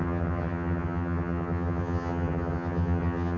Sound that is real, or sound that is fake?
fake